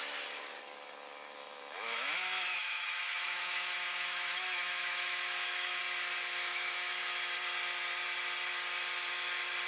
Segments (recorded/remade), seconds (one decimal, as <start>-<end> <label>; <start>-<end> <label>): 0.0-1.4 recorded; 1.4-5.8 remade; 5.8-6.5 recorded; 6.5-7.0 remade; 7.0-9.7 recorded